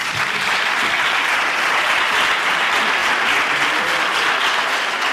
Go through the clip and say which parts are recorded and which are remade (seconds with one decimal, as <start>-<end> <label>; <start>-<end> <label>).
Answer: 0.0-1.5 remade; 1.5-5.1 recorded